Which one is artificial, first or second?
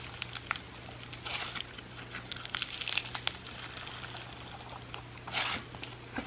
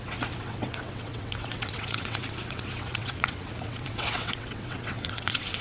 second